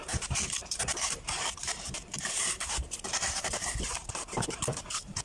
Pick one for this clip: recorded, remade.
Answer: remade